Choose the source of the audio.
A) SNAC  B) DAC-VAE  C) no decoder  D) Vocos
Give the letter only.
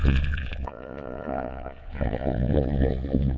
D